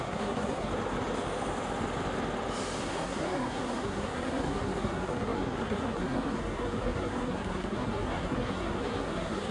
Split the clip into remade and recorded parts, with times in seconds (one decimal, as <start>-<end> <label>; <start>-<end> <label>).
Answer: 0.0-0.7 remade; 0.7-2.8 recorded; 2.8-9.5 remade

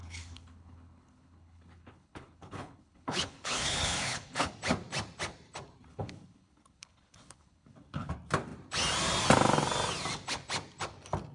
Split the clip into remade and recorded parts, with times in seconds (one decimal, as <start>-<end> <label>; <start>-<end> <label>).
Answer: 0.0-4.5 remade; 4.5-5.9 recorded; 5.9-8.1 remade; 8.1-11.3 recorded

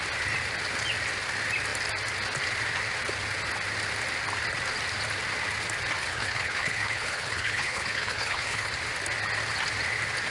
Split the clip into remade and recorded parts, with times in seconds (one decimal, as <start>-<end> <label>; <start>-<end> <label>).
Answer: 0.0-6.0 recorded; 6.0-8.7 remade; 8.7-10.3 recorded